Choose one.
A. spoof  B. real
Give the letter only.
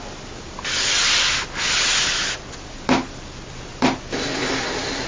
B